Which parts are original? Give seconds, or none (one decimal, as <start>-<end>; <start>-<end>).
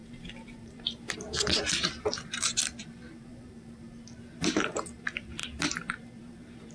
none